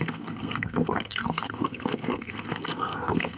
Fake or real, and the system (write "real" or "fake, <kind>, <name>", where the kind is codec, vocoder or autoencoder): fake, codec, SNAC